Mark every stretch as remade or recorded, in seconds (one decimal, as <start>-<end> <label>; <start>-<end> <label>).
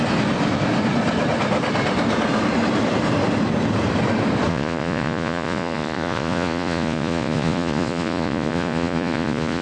0.0-4.5 recorded; 4.5-9.6 remade